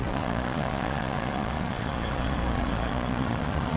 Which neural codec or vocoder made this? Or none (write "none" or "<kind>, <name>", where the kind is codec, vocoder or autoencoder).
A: vocoder, Vocos